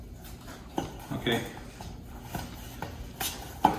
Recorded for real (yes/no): yes